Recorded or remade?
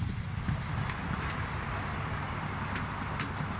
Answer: recorded